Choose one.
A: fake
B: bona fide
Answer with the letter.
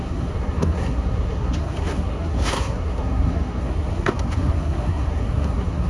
A